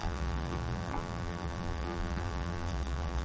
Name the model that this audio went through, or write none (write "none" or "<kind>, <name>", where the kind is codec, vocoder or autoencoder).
vocoder, BigVGAN v2